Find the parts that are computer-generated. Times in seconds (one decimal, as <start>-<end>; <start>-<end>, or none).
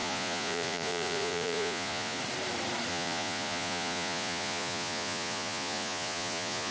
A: 0.0-2.2; 2.9-6.7